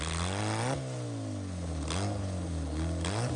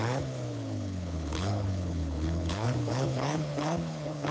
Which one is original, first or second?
first